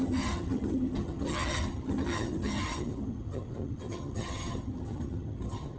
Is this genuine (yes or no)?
no